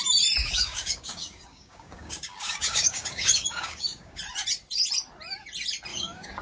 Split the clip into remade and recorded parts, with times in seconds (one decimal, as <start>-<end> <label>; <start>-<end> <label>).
0.0-0.4 recorded; 0.4-4.2 remade; 4.2-5.9 recorded; 5.9-6.4 remade